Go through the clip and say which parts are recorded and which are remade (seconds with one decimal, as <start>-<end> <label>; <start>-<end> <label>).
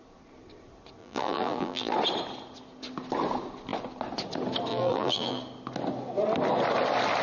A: 0.0-1.0 recorded; 1.0-1.9 remade; 1.9-4.7 recorded; 4.7-5.4 remade; 5.4-7.2 recorded